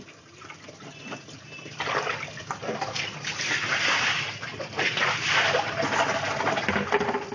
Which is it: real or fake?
real